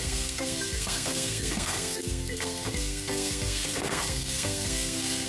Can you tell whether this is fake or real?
fake